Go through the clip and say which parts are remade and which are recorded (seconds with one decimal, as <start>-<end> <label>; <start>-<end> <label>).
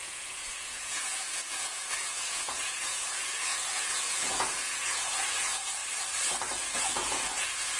0.0-5.8 remade; 5.8-6.8 recorded; 6.8-7.8 remade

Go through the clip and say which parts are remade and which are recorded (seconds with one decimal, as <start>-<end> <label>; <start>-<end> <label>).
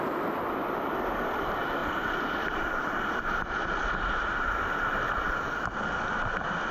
0.0-1.8 recorded; 1.8-3.2 remade; 3.2-6.7 recorded